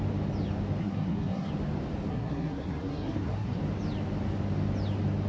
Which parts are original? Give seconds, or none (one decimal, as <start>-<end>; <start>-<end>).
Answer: 0.0-0.8; 1.5-2.1; 3.6-5.3

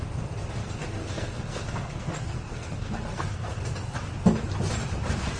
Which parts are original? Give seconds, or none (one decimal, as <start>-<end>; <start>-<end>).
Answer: 0.0-0.6; 3.6-5.4

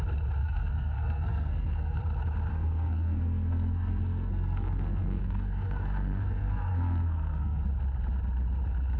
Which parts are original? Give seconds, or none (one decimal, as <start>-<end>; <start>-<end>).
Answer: 0.0-0.4; 2.0-2.5; 7.7-9.0

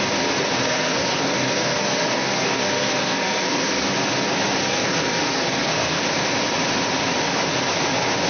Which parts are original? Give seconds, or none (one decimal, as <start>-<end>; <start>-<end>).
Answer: 0.0-0.6; 3.9-4.6; 6.0-8.3

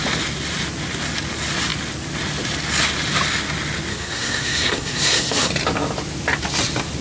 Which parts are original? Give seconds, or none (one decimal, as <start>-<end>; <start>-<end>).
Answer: 0.0-3.9; 5.5-7.0

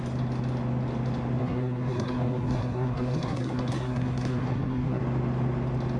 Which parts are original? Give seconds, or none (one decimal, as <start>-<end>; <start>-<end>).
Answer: 0.0-1.4; 5.0-6.0

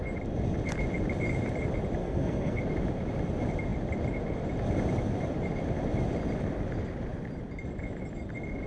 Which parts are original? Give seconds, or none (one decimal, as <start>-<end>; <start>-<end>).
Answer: 0.0-2.0; 2.6-8.7